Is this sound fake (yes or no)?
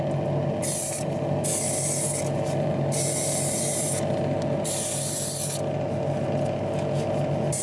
no